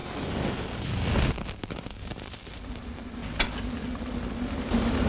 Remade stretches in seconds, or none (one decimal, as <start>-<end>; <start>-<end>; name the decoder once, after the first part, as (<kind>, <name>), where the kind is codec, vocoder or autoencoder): 1.7-3.2 (vocoder, BigVGAN v2); 4.0-5.1